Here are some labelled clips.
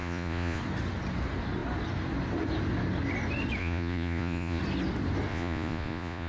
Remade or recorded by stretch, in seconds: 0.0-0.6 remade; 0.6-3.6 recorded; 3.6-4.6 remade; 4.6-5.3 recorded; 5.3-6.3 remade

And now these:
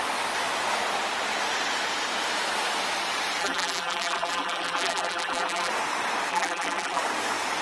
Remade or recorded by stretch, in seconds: 0.0-3.4 recorded; 3.4-5.7 remade; 5.7-6.3 recorded; 6.3-7.0 remade; 7.0-7.6 recorded

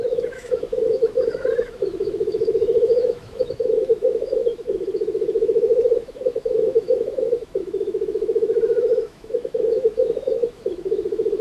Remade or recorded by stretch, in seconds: 0.0-11.4 remade

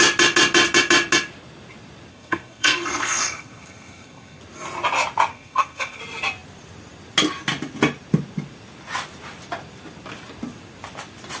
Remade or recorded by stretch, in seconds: 0.0-2.1 recorded; 2.1-4.4 remade; 4.4-5.3 recorded; 5.3-6.0 remade; 6.0-11.4 recorded

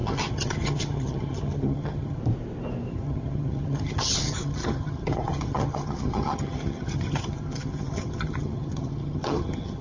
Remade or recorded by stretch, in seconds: 0.0-2.2 remade; 2.2-2.9 recorded; 2.9-9.8 remade

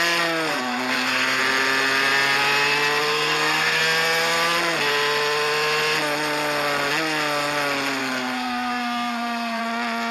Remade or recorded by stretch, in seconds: 0.0-0.5 recorded; 0.5-1.4 remade; 1.4-3.1 recorded; 3.1-3.8 remade; 3.8-8.0 recorded; 8.0-9.6 remade; 9.6-10.1 recorded

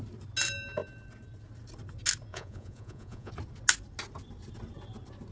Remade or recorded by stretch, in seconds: 0.0-2.3 recorded; 2.3-3.3 remade; 3.3-5.3 recorded